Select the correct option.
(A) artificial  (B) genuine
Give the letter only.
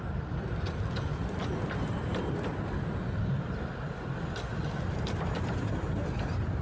B